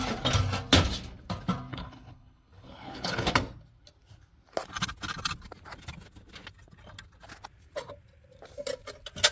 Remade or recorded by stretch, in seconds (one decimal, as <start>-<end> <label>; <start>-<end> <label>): 0.0-1.7 recorded; 1.7-3.3 remade; 3.3-9.3 recorded